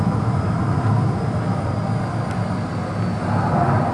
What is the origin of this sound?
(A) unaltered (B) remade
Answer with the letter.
A